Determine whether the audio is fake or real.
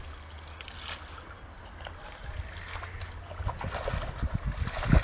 real